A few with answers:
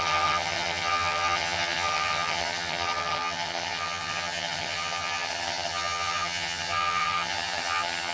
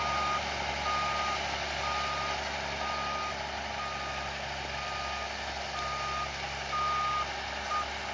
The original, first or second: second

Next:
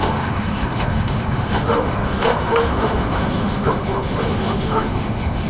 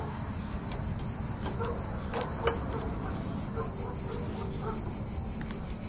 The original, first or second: second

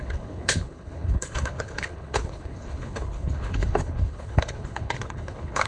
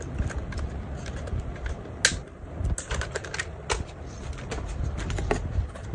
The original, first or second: second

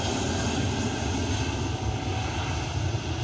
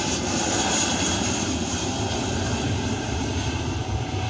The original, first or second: first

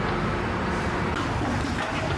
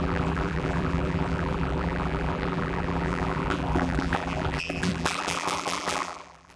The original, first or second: first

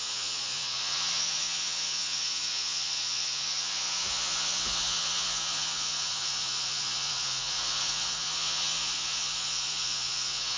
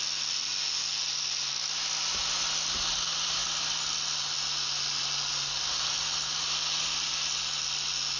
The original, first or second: second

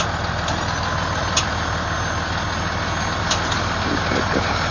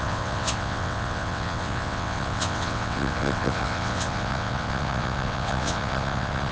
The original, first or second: first